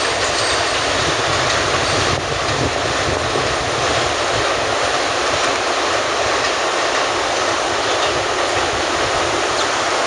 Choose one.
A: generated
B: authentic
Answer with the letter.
B